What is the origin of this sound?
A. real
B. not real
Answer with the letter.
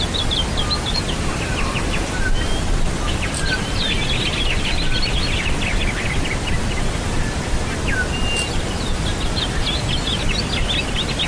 A